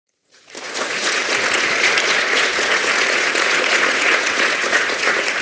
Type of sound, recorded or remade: remade